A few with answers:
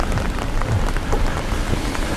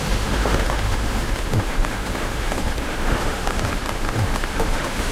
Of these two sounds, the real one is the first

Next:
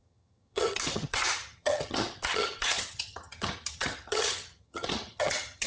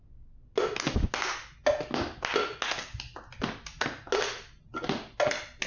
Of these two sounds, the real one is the second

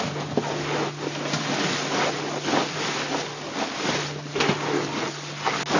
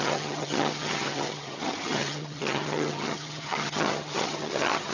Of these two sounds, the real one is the first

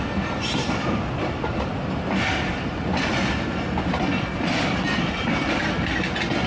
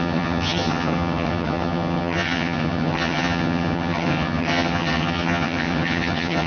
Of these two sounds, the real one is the first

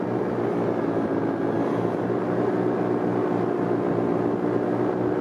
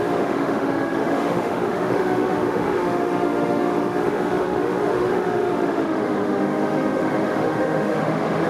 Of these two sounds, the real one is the first